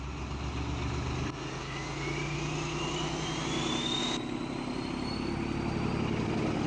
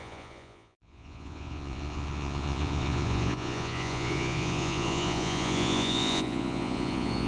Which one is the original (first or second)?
first